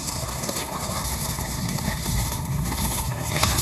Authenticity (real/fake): fake